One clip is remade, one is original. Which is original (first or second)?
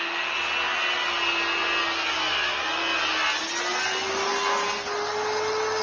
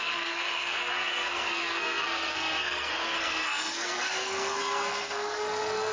first